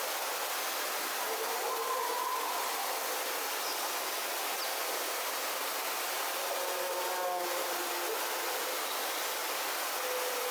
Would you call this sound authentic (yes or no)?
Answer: yes